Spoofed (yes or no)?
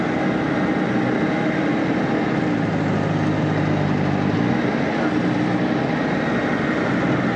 no